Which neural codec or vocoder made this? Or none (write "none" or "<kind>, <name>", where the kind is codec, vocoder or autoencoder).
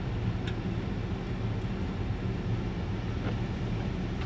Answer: none